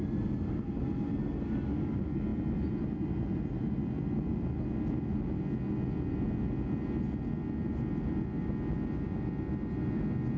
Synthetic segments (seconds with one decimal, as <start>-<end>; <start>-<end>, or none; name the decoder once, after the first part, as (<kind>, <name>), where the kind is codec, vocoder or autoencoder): none